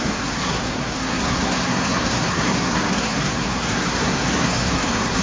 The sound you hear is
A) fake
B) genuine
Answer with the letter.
A